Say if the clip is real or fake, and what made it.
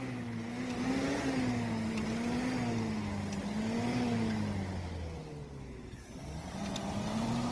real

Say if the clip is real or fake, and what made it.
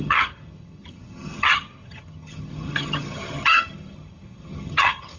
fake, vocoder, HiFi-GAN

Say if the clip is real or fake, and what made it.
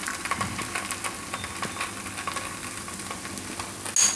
real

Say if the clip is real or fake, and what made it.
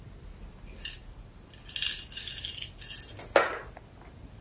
real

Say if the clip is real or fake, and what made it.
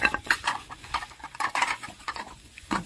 fake, vocoder, Vocos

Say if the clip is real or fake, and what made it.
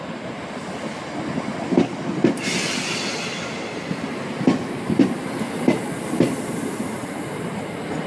real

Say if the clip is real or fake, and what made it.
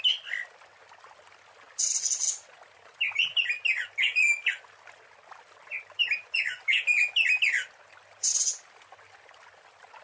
real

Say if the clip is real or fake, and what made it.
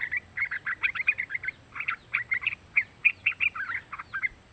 real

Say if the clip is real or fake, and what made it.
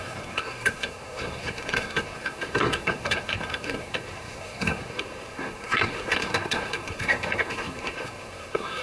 fake, codec, SNAC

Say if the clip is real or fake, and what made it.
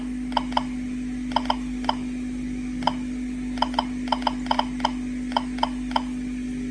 real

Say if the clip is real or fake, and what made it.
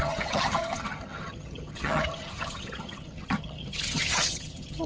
fake, vocoder, HiFi-GAN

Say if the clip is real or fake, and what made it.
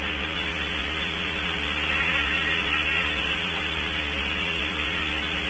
fake, vocoder, Vocos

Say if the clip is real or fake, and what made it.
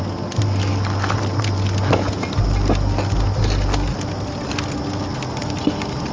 real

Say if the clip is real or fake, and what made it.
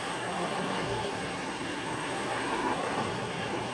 fake, codec, SNAC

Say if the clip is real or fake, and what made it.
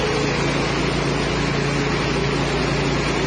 real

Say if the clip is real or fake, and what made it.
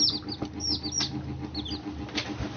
real